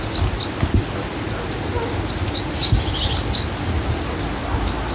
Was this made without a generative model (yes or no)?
yes